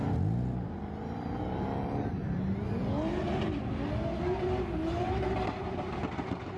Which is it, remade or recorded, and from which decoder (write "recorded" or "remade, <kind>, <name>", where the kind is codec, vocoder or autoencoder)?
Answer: recorded